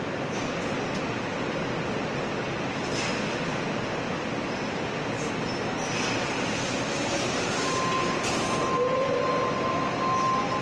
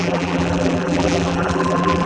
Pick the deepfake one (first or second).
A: second